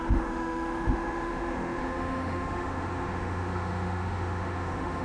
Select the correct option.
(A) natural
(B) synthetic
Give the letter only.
B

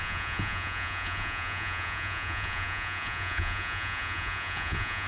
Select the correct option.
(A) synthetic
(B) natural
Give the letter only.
A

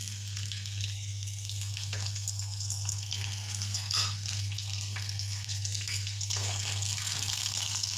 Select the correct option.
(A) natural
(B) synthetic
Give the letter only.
B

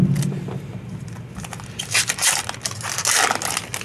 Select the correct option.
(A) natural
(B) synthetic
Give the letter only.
A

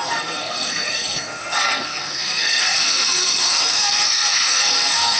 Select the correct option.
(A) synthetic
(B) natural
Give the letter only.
A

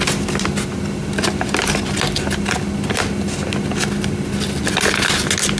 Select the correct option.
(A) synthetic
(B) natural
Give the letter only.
B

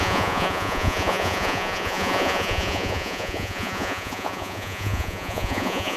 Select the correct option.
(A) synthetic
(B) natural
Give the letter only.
A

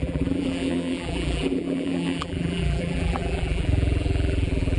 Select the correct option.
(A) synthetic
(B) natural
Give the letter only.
A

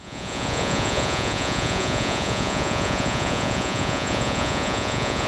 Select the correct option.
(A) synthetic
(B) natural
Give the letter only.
A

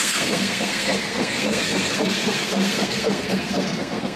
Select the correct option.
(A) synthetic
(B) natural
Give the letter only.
A